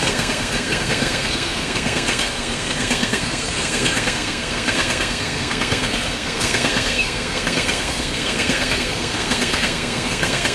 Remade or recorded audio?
remade